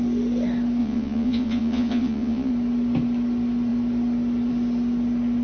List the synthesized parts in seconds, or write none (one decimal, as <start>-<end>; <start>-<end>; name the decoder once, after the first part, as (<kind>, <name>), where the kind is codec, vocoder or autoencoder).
0.8-2.5 (vocoder, Vocos)